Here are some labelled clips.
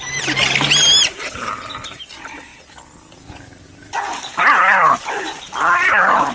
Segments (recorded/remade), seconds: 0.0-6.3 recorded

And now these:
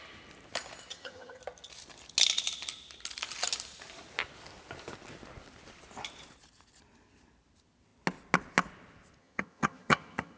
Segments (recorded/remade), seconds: 0.0-0.9 recorded; 0.9-1.4 remade; 1.4-9.2 recorded; 9.2-10.4 remade

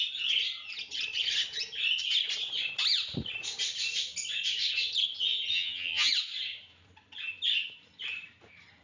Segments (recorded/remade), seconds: 0.0-5.5 recorded; 5.5-6.1 remade; 6.1-8.8 recorded

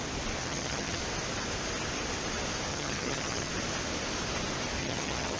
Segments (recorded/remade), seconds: 0.0-0.4 recorded; 0.4-1.0 remade; 1.0-2.7 recorded; 2.7-3.5 remade; 3.5-4.8 recorded; 4.8-5.4 remade